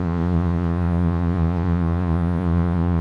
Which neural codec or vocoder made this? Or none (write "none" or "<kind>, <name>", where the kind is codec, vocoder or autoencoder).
vocoder, Vocos